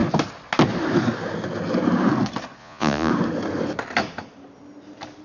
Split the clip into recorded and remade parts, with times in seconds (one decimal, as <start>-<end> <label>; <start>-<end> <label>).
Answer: 0.0-2.6 recorded; 2.6-3.1 remade; 3.1-5.2 recorded